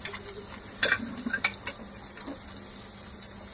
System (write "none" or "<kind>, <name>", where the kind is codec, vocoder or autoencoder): none